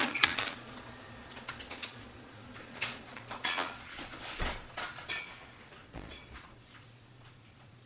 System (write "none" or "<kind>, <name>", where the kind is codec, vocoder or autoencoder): vocoder, Vocos